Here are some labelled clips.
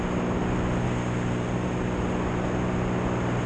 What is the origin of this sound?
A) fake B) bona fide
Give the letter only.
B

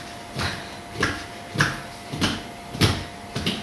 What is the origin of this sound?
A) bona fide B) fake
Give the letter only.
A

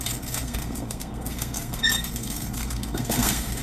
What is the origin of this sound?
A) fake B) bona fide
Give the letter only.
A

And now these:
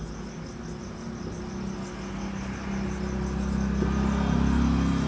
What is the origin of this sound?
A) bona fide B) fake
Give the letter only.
A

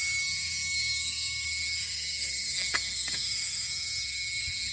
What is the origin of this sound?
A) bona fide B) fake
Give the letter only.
B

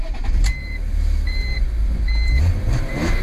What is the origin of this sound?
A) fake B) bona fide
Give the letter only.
A